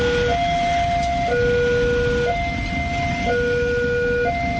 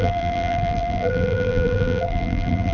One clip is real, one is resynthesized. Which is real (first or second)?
first